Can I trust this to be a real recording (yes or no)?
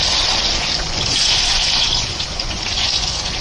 no